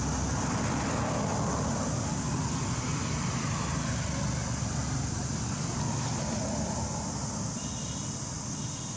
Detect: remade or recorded recorded